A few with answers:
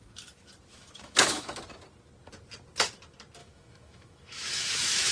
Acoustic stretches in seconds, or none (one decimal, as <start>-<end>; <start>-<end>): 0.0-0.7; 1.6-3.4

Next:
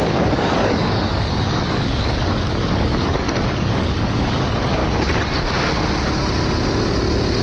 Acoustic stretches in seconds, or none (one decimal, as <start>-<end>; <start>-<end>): 4.8-7.4

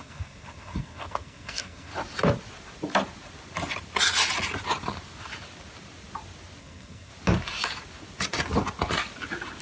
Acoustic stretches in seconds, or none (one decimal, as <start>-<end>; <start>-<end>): 1.9-6.6; 7.1-9.6

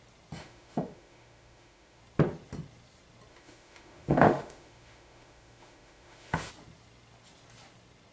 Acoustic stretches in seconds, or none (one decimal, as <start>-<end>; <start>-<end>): 0.0-0.4; 2.0-3.3; 6.5-8.1

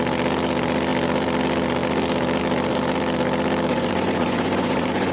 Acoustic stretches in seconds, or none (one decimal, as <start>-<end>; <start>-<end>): 0.0-3.7